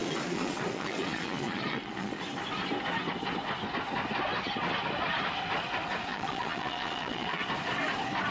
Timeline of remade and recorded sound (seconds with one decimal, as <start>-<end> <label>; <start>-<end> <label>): 0.0-2.2 remade; 2.2-6.1 recorded; 6.1-7.4 remade; 7.4-8.3 recorded